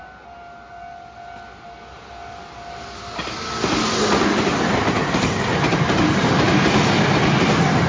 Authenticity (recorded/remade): recorded